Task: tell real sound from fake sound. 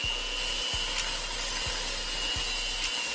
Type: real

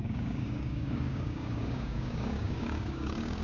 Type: fake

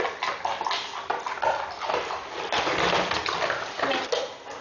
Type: real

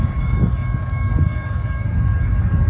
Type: fake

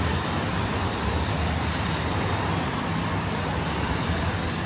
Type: real